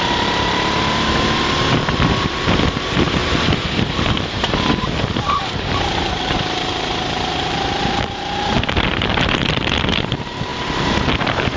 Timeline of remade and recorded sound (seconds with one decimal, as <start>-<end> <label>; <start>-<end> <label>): 0.0-3.2 remade; 3.2-3.9 recorded; 3.9-11.6 remade